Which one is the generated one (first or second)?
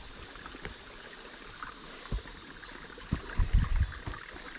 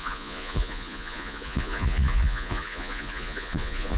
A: second